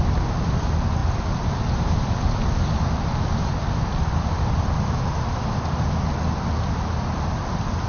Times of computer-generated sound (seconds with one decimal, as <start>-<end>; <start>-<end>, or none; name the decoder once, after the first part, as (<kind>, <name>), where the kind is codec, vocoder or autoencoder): none